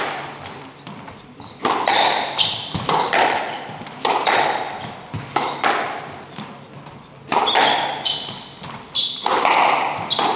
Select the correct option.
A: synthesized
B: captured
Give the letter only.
B